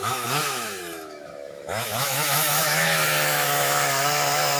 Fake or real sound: fake